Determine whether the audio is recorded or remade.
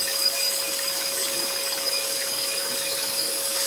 remade